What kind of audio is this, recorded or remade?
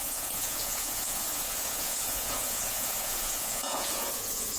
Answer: remade